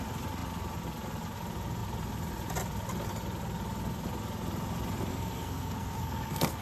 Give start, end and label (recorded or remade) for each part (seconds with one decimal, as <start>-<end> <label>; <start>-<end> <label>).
0.0-5.1 recorded; 5.1-6.6 remade